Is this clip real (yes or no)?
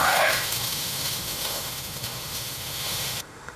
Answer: no